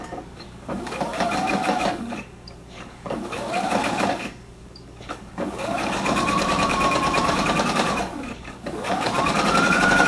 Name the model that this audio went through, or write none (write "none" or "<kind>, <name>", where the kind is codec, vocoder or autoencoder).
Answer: codec, DAC